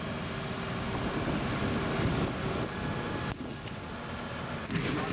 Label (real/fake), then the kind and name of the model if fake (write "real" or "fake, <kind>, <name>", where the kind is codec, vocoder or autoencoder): real